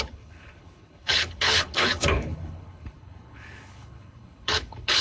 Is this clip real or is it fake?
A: fake